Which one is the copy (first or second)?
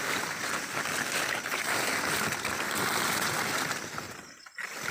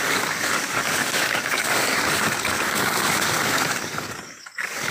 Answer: second